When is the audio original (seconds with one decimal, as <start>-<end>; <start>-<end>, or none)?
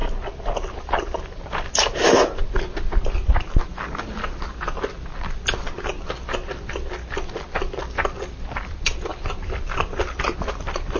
0.0-11.0